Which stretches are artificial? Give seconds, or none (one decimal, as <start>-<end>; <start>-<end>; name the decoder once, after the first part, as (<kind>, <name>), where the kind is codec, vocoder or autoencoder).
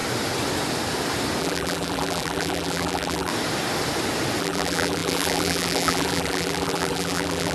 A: 1.4-3.3 (vocoder, BigVGAN v2); 4.4-7.5